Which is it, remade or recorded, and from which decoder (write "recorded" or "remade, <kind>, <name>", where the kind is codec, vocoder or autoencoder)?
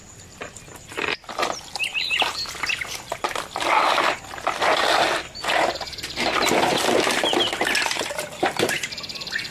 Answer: recorded